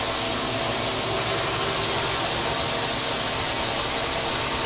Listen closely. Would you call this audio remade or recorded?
recorded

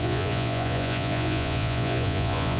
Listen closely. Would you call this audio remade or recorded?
remade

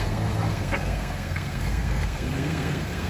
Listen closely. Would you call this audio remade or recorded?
remade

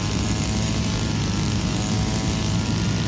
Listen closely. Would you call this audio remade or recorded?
recorded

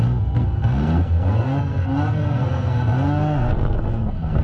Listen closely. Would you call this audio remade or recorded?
remade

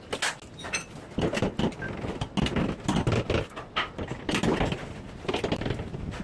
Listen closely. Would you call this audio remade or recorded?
recorded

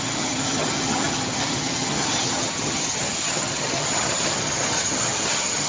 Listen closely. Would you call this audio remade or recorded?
remade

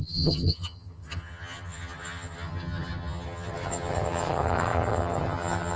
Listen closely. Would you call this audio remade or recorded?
remade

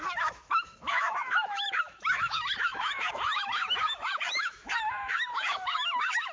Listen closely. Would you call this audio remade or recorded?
remade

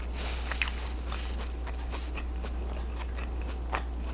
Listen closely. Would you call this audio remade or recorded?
recorded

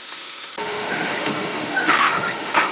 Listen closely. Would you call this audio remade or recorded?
remade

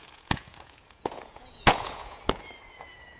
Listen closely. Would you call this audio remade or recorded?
remade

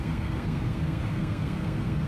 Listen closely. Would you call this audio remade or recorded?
remade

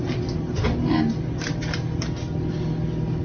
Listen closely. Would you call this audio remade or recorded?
recorded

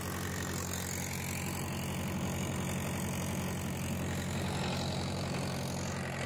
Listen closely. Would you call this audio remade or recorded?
recorded